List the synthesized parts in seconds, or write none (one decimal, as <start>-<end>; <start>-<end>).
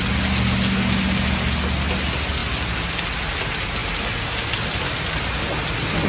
none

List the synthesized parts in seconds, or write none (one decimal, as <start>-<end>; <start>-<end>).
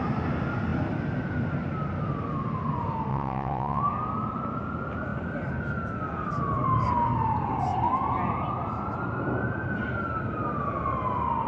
3.1-3.8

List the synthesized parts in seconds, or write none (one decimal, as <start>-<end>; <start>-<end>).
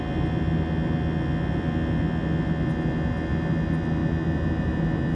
none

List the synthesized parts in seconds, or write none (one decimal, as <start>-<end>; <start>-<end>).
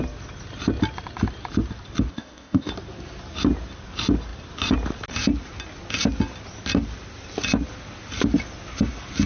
2.1-2.7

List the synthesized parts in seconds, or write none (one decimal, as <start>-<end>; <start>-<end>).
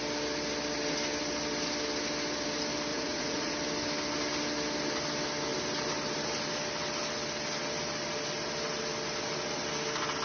2.9-3.5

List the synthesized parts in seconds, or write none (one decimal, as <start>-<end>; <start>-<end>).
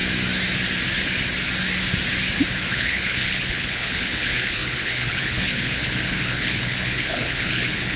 2.7-8.0